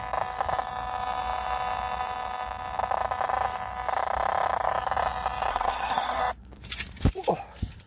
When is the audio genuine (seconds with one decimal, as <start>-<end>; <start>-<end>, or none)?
0.0-5.5; 6.2-7.9